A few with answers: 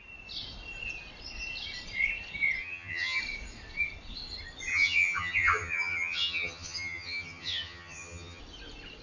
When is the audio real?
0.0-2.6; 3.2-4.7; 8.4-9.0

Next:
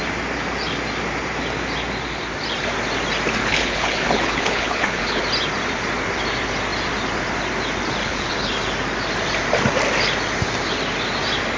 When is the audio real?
0.0-3.4; 5.2-8.0; 8.5-11.6

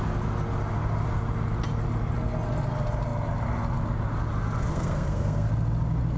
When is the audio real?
0.0-4.7; 5.5-6.2

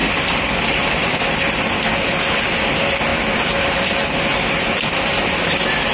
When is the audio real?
0.0-5.9

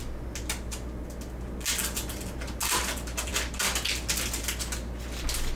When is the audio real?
0.0-5.6

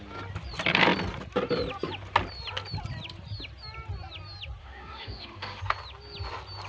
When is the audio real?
0.0-4.6; 5.6-6.7